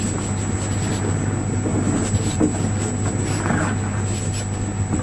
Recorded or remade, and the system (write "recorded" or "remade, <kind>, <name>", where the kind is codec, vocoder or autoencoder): recorded